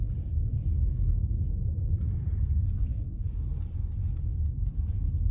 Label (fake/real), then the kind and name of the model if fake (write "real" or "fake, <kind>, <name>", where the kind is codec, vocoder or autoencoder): real